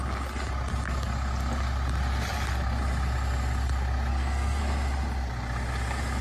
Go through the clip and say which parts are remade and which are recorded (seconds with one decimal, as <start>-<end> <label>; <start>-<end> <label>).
0.0-4.1 recorded; 4.1-4.6 remade; 4.6-6.2 recorded